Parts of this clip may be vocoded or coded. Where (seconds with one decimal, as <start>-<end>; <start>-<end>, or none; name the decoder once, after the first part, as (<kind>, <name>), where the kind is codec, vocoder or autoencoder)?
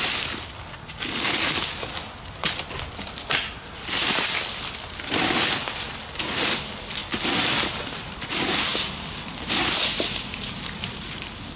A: none